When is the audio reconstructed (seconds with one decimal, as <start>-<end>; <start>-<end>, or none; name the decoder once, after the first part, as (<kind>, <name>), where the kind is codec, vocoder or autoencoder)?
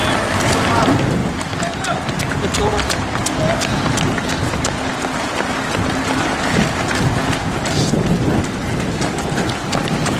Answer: none